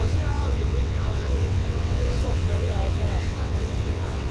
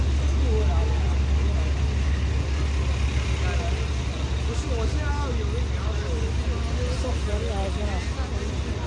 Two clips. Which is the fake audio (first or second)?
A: first